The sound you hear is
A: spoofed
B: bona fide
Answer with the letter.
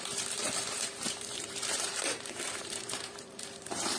A